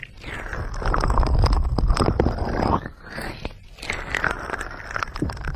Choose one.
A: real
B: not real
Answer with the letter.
A